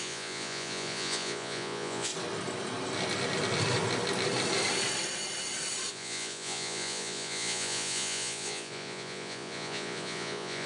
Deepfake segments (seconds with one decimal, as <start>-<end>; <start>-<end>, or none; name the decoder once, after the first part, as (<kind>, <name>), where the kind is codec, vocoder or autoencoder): 0.0-2.1 (vocoder, Vocos); 5.9-10.7